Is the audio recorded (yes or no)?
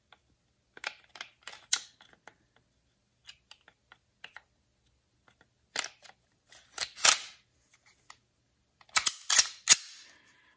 yes